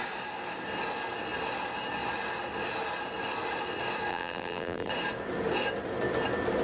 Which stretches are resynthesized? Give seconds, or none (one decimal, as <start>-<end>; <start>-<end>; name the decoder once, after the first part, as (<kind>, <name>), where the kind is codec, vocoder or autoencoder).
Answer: 4.1-4.9 (vocoder, BigVGAN v2)